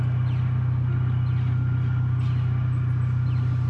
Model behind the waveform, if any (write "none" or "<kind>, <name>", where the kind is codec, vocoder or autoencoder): none